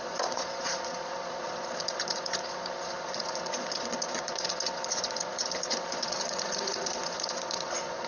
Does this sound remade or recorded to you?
remade